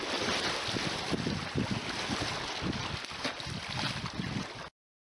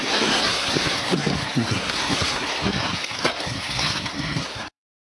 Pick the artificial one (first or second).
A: second